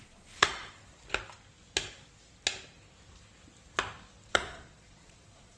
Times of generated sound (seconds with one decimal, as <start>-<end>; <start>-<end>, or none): 0.0-0.9; 4.3-5.6